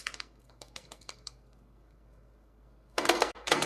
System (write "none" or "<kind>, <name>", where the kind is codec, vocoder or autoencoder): codec, SNAC